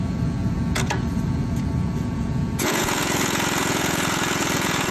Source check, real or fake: fake